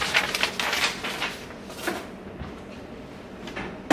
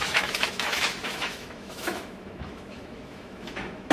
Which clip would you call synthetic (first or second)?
second